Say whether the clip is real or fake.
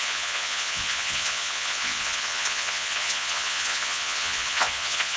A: fake